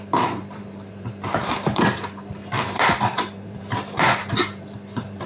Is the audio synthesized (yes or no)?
yes